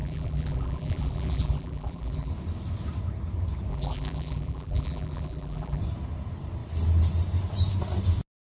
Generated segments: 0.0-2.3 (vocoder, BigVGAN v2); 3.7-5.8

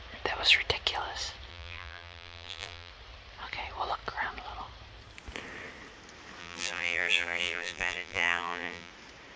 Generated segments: 1.5-2.9 (vocoder, BigVGAN v2); 6.4-8.9

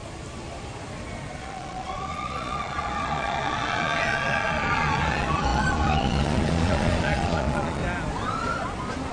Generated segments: 1.4-7.8 (vocoder, Vocos)